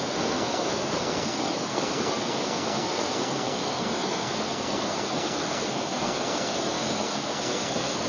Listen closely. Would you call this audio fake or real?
fake